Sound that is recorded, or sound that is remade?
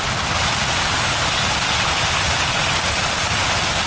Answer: recorded